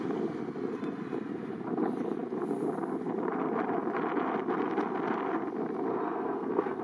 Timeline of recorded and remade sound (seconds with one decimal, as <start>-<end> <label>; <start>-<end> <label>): 0.0-5.9 recorded; 5.9-6.8 remade